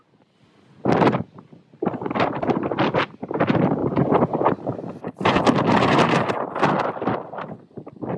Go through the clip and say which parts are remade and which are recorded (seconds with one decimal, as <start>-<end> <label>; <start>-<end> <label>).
0.0-3.8 recorded; 3.8-6.3 remade; 6.3-8.2 recorded